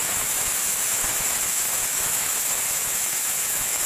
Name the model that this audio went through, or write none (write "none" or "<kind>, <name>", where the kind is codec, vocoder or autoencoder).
autoencoder, DAC-VAE